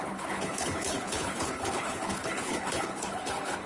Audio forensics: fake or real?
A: fake